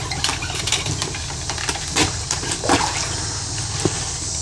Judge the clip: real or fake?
real